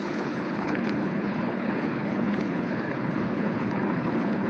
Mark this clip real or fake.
fake